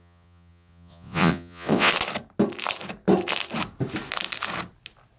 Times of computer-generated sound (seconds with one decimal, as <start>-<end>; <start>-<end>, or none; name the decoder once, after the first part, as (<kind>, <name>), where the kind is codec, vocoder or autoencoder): 0.0-1.9 (vocoder, Vocos)